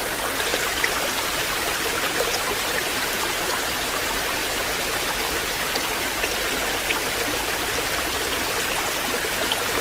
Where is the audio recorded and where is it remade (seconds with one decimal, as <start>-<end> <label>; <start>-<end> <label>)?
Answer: 0.0-0.5 recorded; 0.5-3.2 remade; 3.2-9.8 recorded